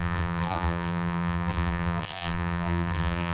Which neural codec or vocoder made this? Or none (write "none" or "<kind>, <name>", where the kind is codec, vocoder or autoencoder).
vocoder, BigVGAN v2